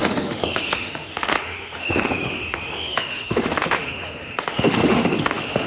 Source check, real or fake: fake